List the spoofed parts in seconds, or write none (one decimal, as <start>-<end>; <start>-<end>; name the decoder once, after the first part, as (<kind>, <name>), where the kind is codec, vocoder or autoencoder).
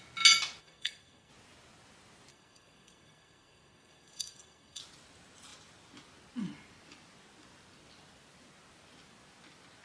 0.6-1.3 (codec, SNAC); 2.3-4.8